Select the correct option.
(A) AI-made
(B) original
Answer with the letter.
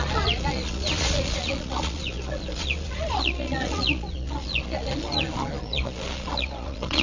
A